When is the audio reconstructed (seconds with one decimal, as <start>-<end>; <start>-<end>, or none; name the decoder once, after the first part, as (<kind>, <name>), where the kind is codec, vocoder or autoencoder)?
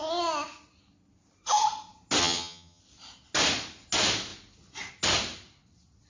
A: 2.2-2.8 (vocoder, HiFi-GAN)